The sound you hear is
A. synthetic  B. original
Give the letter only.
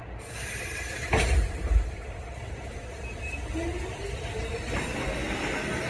B